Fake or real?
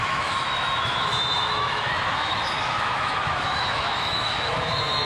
fake